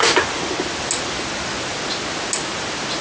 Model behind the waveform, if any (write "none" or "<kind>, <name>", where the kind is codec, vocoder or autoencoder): none